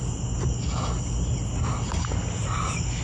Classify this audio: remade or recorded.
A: recorded